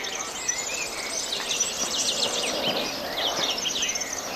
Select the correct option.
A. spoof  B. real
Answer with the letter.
B